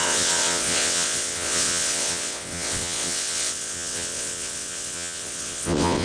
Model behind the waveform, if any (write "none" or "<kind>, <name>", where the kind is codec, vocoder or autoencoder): vocoder, WaveNeXt